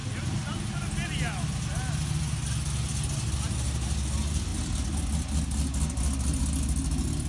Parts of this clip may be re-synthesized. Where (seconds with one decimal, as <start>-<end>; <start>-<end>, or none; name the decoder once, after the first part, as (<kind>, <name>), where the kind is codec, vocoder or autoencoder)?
none